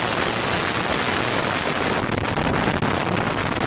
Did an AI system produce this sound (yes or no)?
no